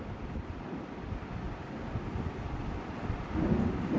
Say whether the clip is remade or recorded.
recorded